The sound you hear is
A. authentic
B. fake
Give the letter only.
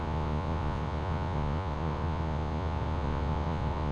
B